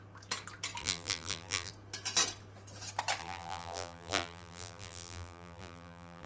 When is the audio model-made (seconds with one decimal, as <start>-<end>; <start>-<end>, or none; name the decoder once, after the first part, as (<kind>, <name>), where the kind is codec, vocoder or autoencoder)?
0.8-1.7 (vocoder, BigVGAN v2); 3.2-6.3